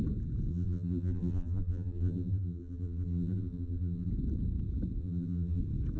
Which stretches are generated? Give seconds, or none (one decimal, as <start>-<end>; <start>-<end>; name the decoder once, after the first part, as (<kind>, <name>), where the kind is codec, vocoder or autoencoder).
0.5-4.1 (vocoder, BigVGAN v2); 5.0-5.6